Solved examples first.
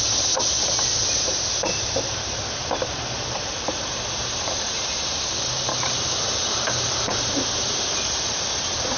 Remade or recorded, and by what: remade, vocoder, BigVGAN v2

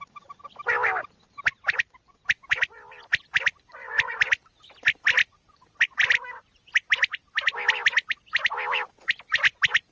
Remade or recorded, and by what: recorded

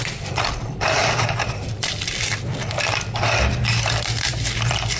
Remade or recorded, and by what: remade, vocoder, BigVGAN v2